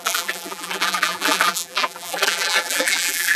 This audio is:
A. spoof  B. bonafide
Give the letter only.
A